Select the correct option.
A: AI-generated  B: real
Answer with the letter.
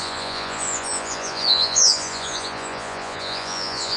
A